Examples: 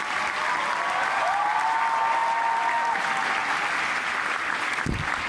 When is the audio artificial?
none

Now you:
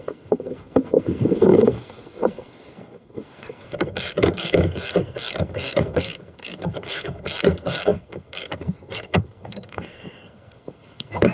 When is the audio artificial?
0.0-11.3 (codec, SNAC)

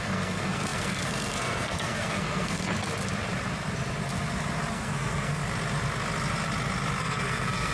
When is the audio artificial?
0.0-2.7 (codec, SNAC); 4.7-5.4; 7.0-7.7